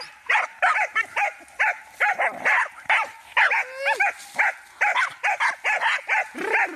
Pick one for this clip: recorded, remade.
recorded